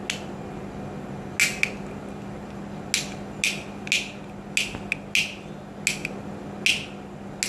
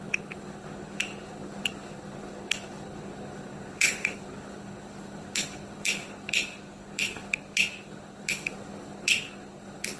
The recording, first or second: first